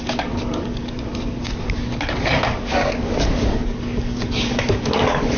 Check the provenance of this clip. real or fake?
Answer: fake